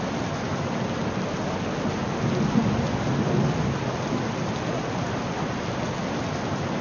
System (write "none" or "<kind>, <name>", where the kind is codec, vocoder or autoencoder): none